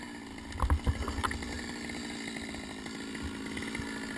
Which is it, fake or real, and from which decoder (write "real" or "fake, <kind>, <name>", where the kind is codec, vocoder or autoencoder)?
real